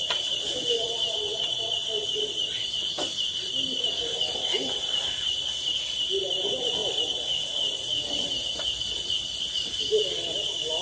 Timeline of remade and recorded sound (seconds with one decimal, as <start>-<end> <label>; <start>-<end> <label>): 0.0-10.8 recorded